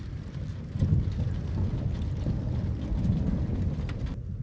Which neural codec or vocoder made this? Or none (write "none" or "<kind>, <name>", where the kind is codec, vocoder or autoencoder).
none